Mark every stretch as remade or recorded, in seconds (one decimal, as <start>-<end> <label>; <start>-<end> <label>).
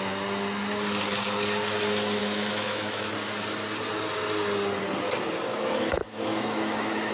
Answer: 0.0-2.2 recorded; 2.2-3.1 remade; 3.1-5.5 recorded; 5.5-7.1 remade